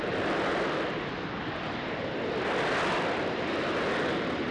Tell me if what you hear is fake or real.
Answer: real